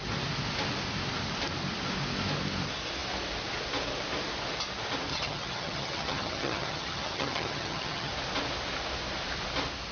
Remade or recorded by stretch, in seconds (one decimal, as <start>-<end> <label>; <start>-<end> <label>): 0.0-5.1 recorded; 5.1-8.1 remade; 8.1-9.9 recorded